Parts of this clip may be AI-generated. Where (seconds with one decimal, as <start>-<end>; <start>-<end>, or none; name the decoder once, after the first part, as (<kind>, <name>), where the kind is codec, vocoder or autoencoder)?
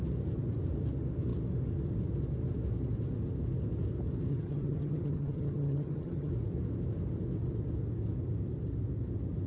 4.3-6.3 (vocoder, HiFi-GAN)